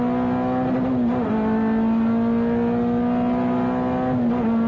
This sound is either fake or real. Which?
real